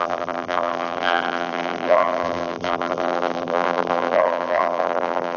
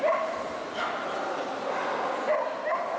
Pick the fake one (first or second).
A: first